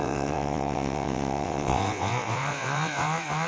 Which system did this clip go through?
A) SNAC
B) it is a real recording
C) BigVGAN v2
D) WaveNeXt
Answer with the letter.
D